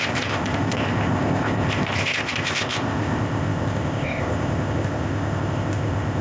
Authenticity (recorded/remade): remade